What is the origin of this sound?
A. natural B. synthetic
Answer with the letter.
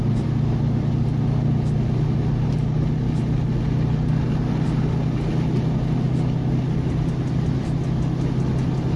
A